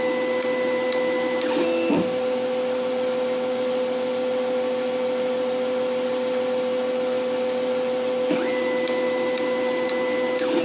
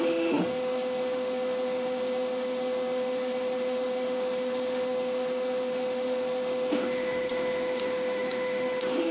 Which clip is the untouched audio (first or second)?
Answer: first